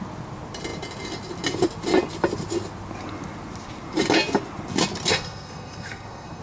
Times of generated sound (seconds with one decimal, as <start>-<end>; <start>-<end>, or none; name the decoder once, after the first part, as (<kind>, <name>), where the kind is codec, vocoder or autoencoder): 5.1-6.4 (codec, SNAC)